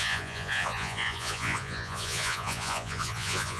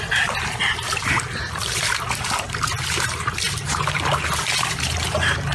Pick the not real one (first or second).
first